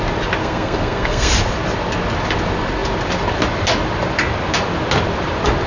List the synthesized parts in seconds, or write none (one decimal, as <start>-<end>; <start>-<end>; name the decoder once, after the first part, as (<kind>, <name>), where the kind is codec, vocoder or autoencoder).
0.4-1.3 (codec, SNAC)